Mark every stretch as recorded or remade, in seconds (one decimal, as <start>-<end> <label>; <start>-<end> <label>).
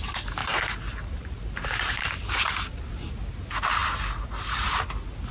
0.0-0.4 recorded; 0.4-2.9 remade; 2.9-5.3 recorded